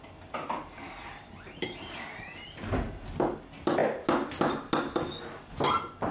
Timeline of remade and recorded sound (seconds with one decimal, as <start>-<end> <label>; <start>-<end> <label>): 0.0-1.1 recorded; 1.1-2.3 remade; 2.3-6.1 recorded